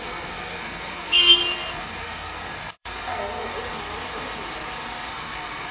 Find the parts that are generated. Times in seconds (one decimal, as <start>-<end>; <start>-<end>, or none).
0.0-3.5; 5.1-5.7

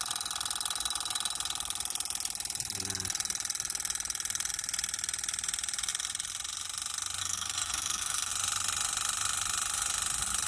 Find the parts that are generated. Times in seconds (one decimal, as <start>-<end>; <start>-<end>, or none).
7.2-8.3

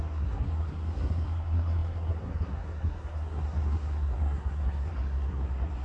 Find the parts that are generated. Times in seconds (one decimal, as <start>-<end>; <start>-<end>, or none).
0.0-5.8

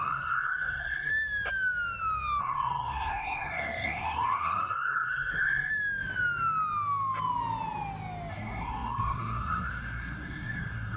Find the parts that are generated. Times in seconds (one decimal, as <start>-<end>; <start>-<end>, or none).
0.0-1.1; 2.4-5.7; 8.3-11.0

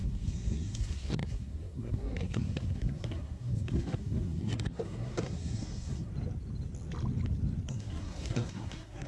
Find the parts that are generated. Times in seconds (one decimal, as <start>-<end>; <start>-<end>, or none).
0.0-6.1; 7.7-9.1

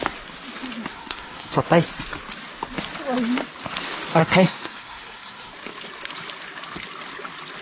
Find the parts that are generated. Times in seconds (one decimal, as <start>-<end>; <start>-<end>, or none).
0.9-1.6; 4.2-5.5

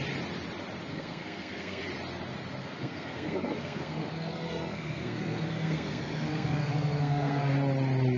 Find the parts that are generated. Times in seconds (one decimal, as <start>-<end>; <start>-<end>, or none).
0.9-1.8; 2.6-7.5